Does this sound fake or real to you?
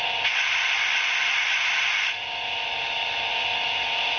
real